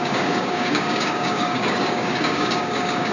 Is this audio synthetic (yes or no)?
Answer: yes